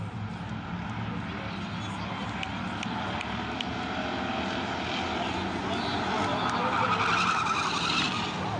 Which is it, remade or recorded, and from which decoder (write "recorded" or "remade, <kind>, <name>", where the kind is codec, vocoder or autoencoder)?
recorded